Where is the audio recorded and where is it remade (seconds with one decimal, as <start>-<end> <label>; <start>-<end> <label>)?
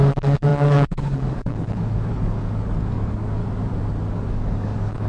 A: 0.0-3.4 remade; 3.4-4.1 recorded; 4.1-5.1 remade